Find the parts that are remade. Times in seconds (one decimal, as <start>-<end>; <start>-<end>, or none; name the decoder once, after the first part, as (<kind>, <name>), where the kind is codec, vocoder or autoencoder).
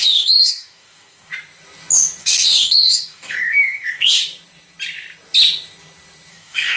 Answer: 0.0-1.3 (codec, DAC); 2.2-4.2; 6.3-6.8